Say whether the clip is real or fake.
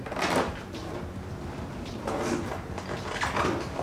real